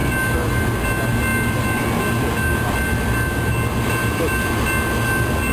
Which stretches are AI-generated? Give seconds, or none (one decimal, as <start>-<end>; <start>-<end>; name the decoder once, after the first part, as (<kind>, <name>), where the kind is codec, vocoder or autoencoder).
none